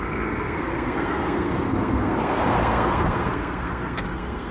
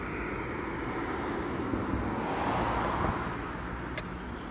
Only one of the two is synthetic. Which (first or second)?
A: first